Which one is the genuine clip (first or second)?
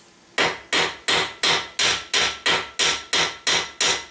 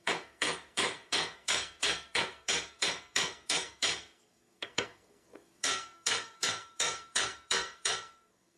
first